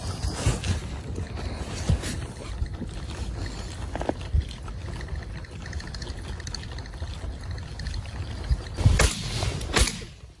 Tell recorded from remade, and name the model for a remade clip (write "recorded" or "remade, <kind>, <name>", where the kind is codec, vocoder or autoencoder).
recorded